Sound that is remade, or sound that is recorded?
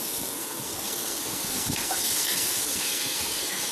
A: remade